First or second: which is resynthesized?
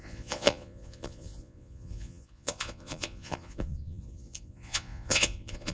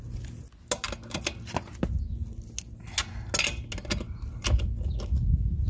first